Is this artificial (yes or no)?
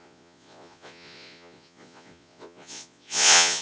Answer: yes